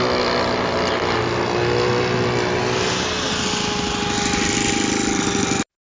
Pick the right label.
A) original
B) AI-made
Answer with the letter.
A